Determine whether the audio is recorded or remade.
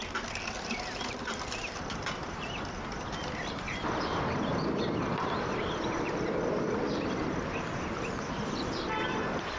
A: remade